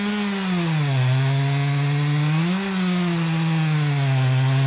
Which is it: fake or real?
real